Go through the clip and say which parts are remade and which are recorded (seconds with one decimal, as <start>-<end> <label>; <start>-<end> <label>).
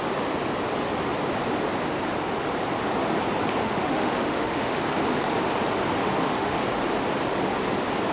0.0-3.6 recorded; 3.6-4.8 remade; 4.8-6.0 recorded; 6.0-6.6 remade; 6.6-8.1 recorded